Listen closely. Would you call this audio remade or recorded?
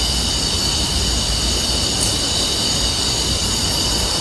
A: recorded